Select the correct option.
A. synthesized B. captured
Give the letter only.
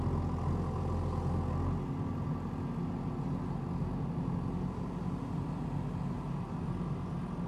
B